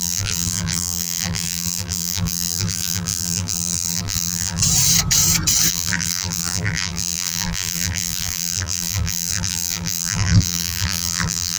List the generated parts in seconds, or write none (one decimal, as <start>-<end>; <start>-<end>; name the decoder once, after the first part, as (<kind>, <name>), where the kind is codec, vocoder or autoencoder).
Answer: 0.0-4.6 (vocoder, BigVGAN v2); 5.7-11.6